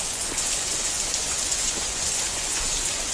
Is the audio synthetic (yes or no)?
yes